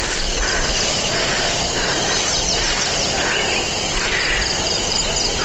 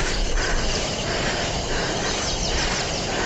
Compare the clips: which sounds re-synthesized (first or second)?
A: second